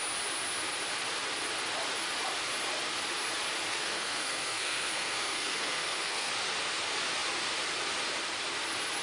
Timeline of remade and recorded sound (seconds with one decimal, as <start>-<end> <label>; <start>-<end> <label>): 0.0-3.7 recorded; 3.7-6.3 remade; 6.3-9.0 recorded